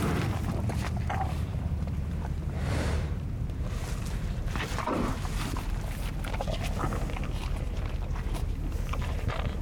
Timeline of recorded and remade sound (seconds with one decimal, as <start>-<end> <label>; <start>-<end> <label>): 0.0-1.5 recorded; 1.5-5.1 remade; 5.1-9.6 recorded